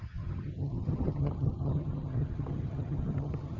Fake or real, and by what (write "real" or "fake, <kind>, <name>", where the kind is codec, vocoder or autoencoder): fake, vocoder, HiFi-GAN